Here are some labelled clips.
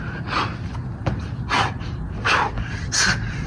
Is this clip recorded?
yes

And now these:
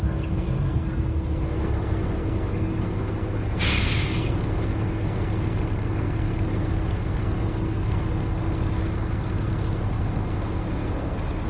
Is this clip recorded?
no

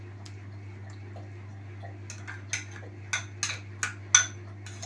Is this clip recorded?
yes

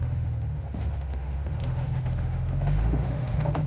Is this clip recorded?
no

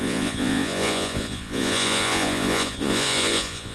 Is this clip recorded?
no